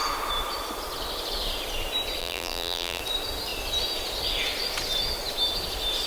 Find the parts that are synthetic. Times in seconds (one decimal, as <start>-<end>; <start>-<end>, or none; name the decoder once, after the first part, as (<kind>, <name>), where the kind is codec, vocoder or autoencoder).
2.2-3.0 (vocoder, BigVGAN v2)